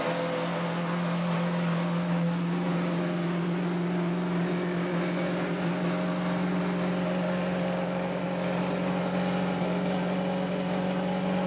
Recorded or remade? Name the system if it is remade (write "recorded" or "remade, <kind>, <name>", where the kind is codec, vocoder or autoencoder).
recorded